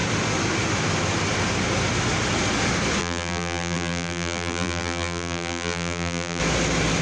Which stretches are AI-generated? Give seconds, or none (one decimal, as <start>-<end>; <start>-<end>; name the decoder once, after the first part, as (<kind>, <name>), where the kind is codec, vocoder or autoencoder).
3.0-6.4 (vocoder, BigVGAN v2)